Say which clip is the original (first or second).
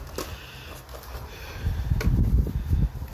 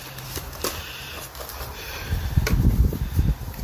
first